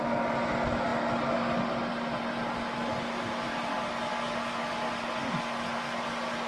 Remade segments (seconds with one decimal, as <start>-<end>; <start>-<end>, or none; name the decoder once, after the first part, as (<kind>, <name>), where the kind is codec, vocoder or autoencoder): none